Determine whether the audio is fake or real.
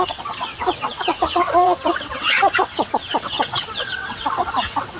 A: fake